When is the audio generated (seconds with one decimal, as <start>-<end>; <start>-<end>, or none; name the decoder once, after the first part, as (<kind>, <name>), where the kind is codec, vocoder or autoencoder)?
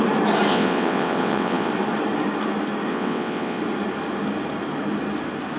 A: 0.5-1.7 (vocoder, WaveNeXt); 2.9-3.6